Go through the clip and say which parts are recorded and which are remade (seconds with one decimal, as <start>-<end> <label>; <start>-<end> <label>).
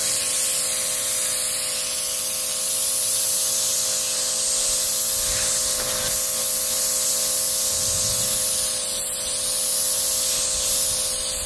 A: 0.0-11.5 recorded